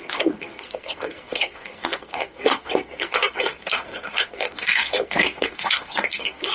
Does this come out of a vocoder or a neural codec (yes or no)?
yes